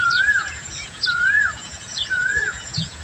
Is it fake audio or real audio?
fake